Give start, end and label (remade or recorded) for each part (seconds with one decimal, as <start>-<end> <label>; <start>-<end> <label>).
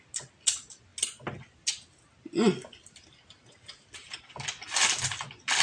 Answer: 0.0-5.6 recorded